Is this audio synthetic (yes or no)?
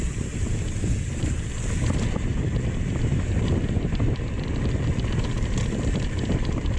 no